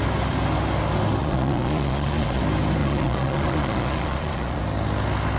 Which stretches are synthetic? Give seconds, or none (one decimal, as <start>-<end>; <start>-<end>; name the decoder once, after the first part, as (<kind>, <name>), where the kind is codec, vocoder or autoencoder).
1.2-2.4 (vocoder, Vocos); 2.8-4.6